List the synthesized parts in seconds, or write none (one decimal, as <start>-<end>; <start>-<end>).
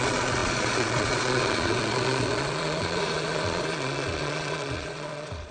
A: 0.0-5.5